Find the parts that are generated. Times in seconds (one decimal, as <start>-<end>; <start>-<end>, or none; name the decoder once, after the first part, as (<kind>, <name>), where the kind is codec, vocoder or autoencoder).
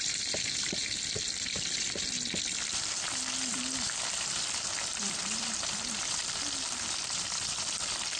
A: 0.0-0.8 (vocoder, BigVGAN v2); 4.0-8.2